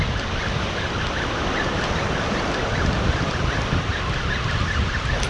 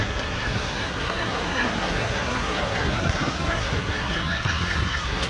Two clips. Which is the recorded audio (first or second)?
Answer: first